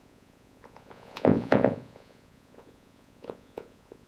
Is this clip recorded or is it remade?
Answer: remade